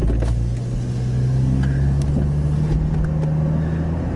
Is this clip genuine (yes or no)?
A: yes